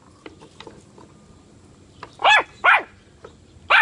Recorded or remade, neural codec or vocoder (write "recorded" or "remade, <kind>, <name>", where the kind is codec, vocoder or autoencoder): recorded